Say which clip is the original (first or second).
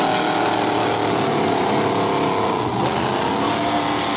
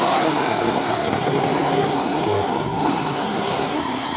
first